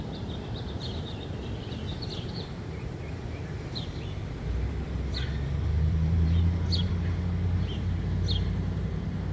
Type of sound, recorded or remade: remade